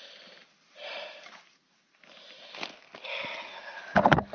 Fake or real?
real